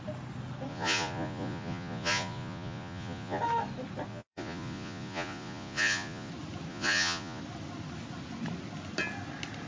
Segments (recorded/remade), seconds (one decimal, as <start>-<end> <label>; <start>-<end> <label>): 0.0-0.7 recorded; 0.7-3.4 remade; 3.4-4.1 recorded; 4.1-6.3 remade; 6.3-6.7 recorded; 6.7-7.4 remade; 7.4-9.7 recorded